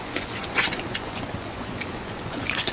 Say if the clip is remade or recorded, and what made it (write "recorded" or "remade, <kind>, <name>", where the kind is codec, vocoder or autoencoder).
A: remade, vocoder, Vocos